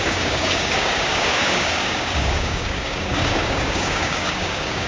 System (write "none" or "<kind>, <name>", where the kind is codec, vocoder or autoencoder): codec, DAC